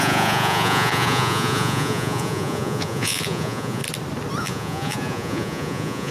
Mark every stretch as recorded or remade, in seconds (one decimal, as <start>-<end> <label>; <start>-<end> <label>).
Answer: 0.0-3.8 remade; 3.8-4.4 recorded; 4.4-6.1 remade